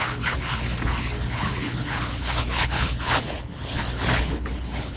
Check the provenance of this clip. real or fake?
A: fake